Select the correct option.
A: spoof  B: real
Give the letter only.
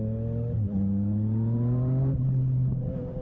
B